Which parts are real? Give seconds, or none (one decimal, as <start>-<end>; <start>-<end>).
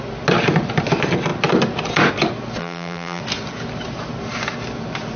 0.0-2.6; 3.2-5.2